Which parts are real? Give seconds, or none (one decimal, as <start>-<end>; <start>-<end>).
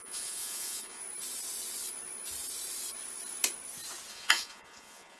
1.0-4.1